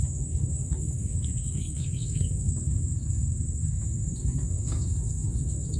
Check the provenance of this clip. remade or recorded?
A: remade